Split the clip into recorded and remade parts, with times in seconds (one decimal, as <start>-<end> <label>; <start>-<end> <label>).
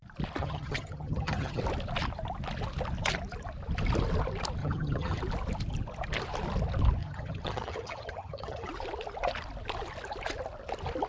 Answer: 0.0-0.4 recorded; 0.4-1.6 remade; 1.6-4.6 recorded; 4.6-5.2 remade; 5.2-7.0 recorded; 7.0-8.7 remade; 8.7-11.1 recorded